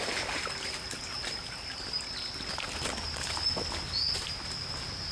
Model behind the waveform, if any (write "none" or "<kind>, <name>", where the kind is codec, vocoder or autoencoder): none